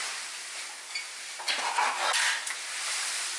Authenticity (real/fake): real